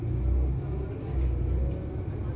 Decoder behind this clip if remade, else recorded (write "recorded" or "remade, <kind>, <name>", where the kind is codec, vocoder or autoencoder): recorded